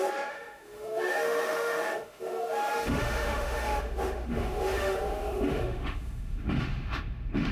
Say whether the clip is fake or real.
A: fake